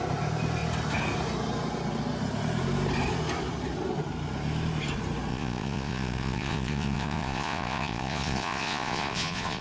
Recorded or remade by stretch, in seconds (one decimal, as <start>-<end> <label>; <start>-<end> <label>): 0.0-5.3 recorded; 5.3-9.6 remade